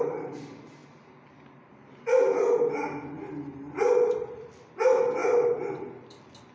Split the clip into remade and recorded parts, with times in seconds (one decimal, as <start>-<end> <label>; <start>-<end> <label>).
0.0-6.5 recorded